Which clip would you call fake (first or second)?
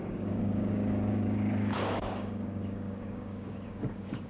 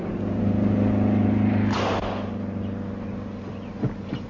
first